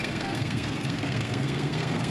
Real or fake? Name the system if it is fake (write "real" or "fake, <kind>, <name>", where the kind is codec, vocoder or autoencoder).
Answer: fake, codec, SNAC